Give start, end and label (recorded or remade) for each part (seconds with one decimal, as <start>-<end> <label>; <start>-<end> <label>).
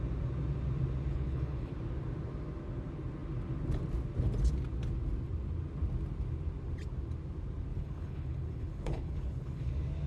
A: 0.0-1.1 recorded; 1.1-1.7 remade; 1.7-7.7 recorded; 7.7-9.7 remade; 9.7-10.1 recorded